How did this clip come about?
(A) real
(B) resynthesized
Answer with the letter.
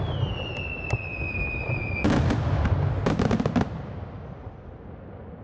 A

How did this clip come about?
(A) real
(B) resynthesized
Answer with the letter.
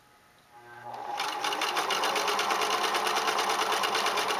A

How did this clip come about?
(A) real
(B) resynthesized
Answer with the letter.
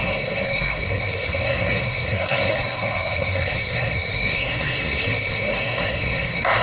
B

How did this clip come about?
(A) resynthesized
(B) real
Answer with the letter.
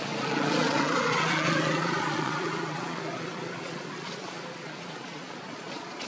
A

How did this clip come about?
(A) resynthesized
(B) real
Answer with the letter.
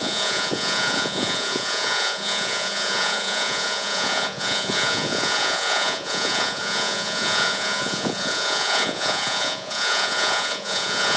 A